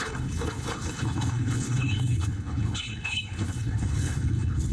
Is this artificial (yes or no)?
yes